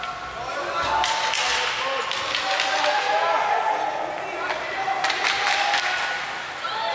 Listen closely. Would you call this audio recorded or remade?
recorded